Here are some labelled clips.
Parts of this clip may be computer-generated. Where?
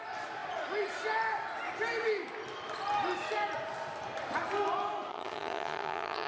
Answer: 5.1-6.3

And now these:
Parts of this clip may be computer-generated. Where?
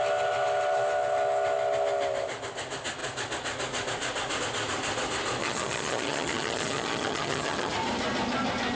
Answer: 5.4-7.7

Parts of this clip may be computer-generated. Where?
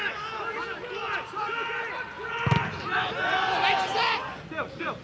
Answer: none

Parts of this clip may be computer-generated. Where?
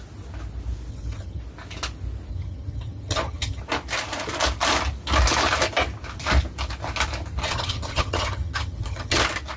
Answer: 0.9-1.4; 2.3-3.6; 7.4-9.2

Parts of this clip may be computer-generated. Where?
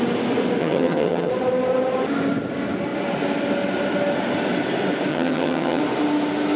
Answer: 0.6-1.3; 5.1-5.8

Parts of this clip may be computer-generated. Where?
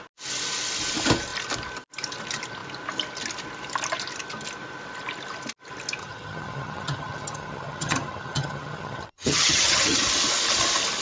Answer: 6.0-10.0